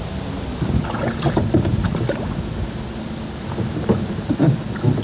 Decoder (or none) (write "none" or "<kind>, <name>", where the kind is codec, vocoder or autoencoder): none